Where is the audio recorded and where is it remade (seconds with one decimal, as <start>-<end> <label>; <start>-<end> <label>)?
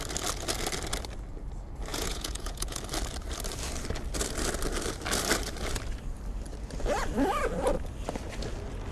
0.0-1.9 recorded; 1.9-2.8 remade; 2.8-8.9 recorded